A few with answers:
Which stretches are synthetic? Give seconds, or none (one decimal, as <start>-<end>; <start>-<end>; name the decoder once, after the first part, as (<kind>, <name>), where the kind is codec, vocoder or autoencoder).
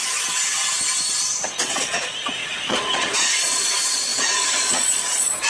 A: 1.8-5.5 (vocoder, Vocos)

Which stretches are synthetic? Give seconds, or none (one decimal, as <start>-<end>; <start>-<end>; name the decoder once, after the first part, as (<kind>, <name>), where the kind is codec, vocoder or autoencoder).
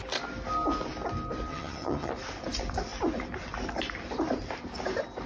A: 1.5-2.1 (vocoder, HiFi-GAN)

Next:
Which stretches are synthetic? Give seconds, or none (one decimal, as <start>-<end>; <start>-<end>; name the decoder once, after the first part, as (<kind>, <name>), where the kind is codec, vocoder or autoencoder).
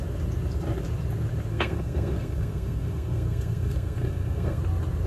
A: 1.5-4.6 (codec, SNAC)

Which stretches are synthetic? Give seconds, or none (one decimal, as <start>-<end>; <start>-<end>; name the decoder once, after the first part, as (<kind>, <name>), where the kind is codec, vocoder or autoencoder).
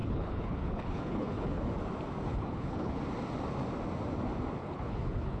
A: 0.0-1.7 (codec, HILCodec); 2.3-3.0; 4.6-5.4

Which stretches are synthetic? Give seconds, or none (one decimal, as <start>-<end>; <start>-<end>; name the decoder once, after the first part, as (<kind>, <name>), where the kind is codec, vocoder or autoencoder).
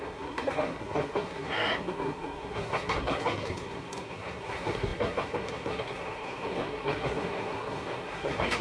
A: 0.0-8.6 (codec, SNAC)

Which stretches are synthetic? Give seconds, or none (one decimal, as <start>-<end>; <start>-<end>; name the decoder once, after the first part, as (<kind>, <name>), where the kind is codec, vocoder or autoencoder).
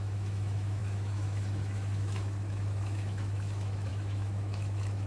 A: 0.0-5.1 (autoencoder, DAC-VAE)